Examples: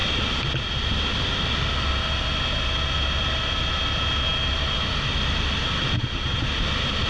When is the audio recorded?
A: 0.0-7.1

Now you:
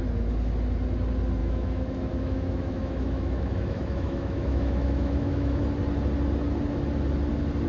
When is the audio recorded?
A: 0.0-1.4; 5.6-7.7

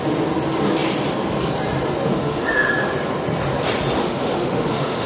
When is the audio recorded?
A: 0.0-2.1; 2.7-4.0

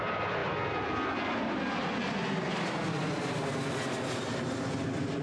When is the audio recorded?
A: 0.0-5.2

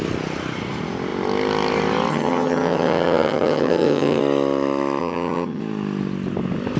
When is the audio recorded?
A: 0.0-2.1; 4.2-5.0; 5.6-6.8